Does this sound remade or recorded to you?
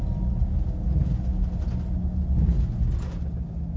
recorded